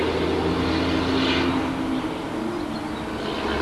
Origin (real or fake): real